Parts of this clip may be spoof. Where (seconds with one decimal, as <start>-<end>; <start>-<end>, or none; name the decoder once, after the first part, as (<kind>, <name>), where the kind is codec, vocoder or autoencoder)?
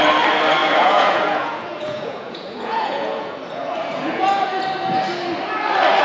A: 0.6-4.2 (vocoder, Vocos)